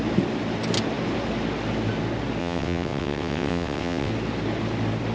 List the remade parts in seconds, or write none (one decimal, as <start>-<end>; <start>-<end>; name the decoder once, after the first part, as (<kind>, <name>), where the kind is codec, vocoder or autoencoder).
2.4-4.1 (vocoder, WaveNeXt)